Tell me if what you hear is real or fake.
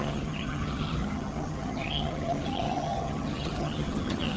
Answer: fake